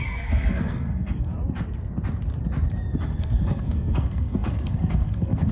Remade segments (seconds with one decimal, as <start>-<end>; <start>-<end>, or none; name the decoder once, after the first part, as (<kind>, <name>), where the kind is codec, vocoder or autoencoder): 0.0-1.3 (codec, SNAC); 3.2-5.5